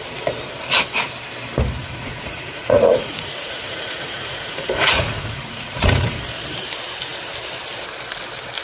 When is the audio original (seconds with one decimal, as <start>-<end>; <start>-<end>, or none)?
0.0-1.8; 6.1-8.6